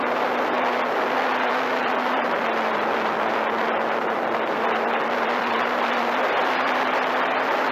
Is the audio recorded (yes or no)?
no